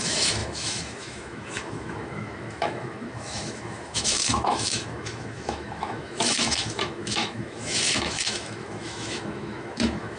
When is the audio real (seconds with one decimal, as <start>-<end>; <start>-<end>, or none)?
none